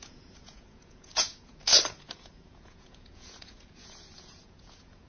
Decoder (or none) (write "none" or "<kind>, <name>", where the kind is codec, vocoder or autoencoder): vocoder, Vocos